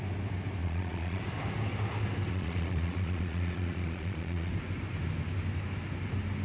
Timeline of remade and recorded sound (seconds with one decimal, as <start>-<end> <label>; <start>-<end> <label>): 0.0-0.6 recorded; 0.6-1.2 remade; 1.2-2.3 recorded; 2.3-4.5 remade; 4.5-6.4 recorded

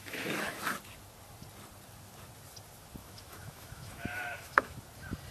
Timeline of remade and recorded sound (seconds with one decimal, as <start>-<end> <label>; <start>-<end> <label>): 0.0-0.6 remade; 0.6-3.0 recorded; 3.0-4.8 remade; 4.8-5.3 recorded

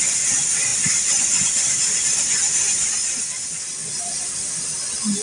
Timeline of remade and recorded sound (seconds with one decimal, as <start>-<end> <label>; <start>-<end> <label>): 0.0-0.7 recorded; 0.7-3.3 remade; 3.3-3.8 recorded; 3.8-4.6 remade; 4.6-5.2 recorded

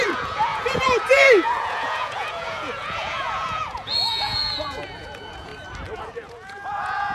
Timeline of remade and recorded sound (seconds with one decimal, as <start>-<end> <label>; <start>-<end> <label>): 0.0-5.5 remade; 5.5-6.0 recorded; 6.0-7.1 remade

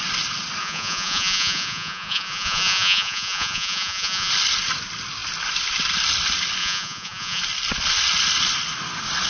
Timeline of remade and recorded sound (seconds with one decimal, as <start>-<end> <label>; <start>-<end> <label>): 0.0-0.6 recorded; 0.6-4.3 remade; 4.3-6.6 recorded; 6.6-7.4 remade; 7.4-9.3 recorded

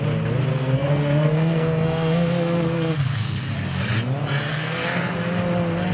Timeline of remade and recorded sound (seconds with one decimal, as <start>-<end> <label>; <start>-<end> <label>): 0.0-0.5 recorded; 0.5-3.4 remade; 3.4-4.5 recorded; 4.5-5.1 remade; 5.1-5.9 recorded

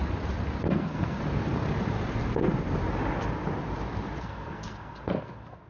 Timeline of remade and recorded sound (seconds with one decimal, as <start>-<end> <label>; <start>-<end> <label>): 0.0-0.6 recorded; 0.6-1.2 remade; 1.2-4.2 recorded; 4.2-5.7 remade

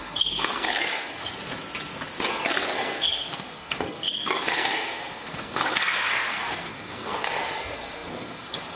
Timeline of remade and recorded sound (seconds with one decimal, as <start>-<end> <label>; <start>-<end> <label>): 0.0-1.2 remade; 1.2-2.3 recorded; 2.3-8.8 remade